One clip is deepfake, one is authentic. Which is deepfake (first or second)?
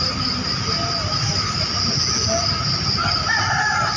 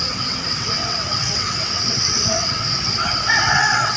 second